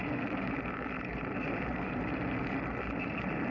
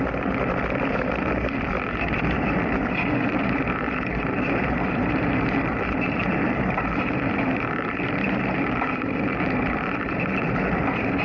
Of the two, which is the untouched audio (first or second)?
first